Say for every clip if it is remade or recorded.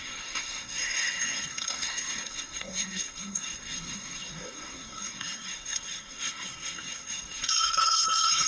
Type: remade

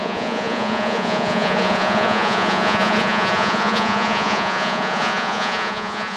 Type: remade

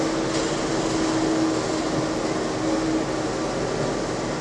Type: recorded